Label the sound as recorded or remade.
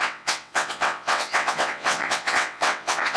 remade